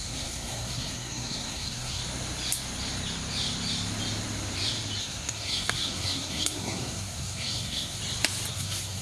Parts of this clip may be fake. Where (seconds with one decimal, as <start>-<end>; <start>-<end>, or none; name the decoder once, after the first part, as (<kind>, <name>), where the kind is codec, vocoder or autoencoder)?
0.0-2.0 (codec, SNAC); 5.0-8.0; 8.5-9.0